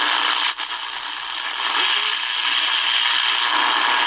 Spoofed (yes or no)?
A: yes